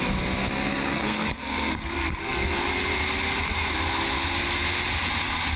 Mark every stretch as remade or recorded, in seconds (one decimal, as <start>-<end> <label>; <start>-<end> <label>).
0.0-0.7 recorded; 0.7-2.6 remade; 2.6-5.6 recorded